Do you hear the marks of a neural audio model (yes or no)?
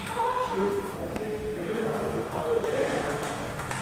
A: yes